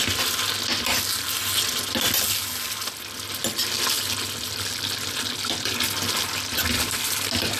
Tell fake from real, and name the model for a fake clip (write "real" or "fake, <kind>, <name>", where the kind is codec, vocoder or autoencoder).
real